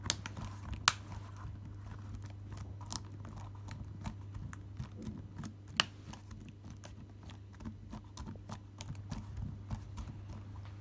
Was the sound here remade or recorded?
recorded